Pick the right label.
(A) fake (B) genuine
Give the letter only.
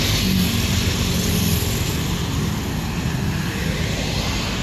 B